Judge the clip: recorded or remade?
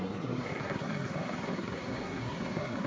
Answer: remade